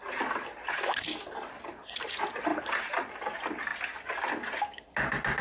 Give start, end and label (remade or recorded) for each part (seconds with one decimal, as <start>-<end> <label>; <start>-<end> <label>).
0.0-2.5 recorded; 2.5-3.1 remade; 3.1-3.7 recorded; 3.7-4.3 remade; 4.3-5.4 recorded